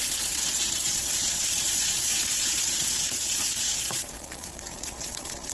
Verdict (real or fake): fake